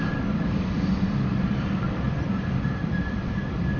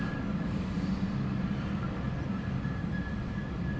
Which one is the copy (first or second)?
first